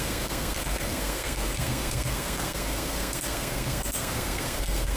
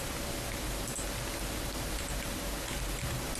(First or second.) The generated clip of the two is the first